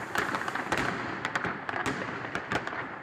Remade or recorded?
recorded